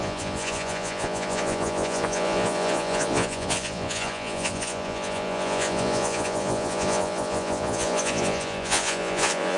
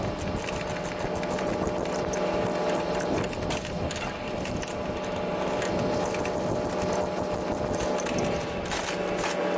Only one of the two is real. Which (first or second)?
second